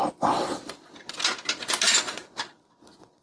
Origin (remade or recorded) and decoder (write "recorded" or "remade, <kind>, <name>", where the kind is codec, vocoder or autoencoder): recorded